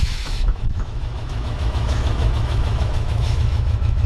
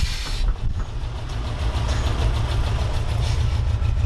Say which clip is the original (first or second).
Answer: second